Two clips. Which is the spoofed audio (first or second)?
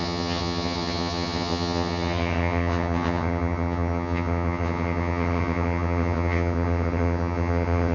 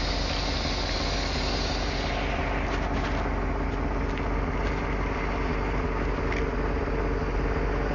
first